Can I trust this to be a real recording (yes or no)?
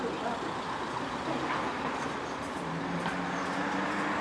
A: yes